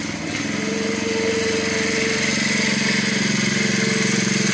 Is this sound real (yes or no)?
no